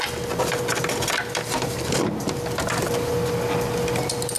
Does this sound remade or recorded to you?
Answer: remade